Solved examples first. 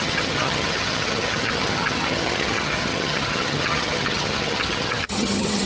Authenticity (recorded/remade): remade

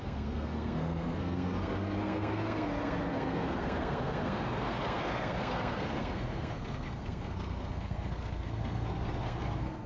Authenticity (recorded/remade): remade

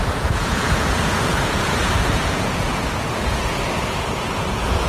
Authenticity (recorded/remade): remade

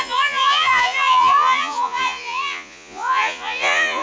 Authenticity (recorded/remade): remade